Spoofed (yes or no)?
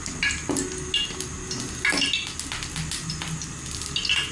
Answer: no